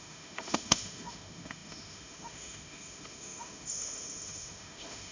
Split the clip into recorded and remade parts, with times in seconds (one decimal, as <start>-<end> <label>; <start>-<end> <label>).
0.0-5.1 remade